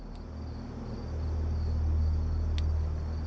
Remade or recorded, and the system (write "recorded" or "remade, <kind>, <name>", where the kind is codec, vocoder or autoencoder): recorded